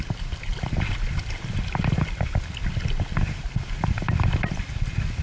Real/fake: real